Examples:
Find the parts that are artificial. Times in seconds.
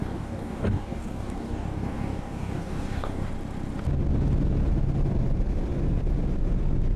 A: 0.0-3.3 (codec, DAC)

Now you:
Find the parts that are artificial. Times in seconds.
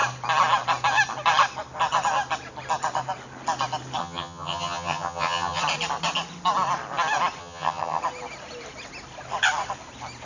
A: 4.0-5.6 (vocoder, HiFi-GAN); 7.4-8.0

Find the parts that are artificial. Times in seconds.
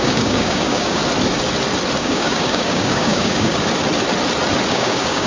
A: 0.0-1.0 (codec, DAC); 2.0-3.5; 4.7-5.3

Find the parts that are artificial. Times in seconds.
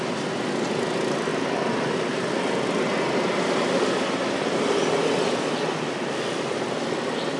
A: none